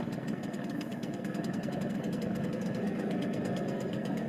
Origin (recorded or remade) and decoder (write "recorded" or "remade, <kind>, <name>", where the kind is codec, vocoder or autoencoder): remade, codec, SNAC